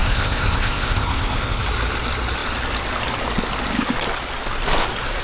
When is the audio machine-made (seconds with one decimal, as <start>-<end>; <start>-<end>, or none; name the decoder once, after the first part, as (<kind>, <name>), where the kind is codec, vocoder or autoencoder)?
0.0-1.6 (codec, ZipCodec)